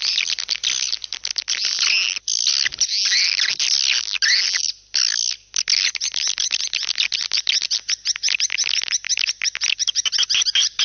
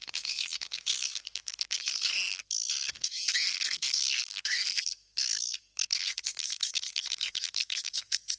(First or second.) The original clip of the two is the first